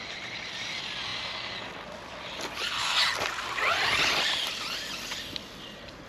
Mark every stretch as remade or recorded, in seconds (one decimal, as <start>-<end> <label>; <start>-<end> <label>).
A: 0.0-6.1 recorded